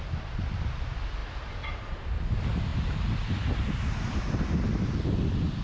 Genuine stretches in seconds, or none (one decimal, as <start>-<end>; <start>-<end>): 0.0-5.6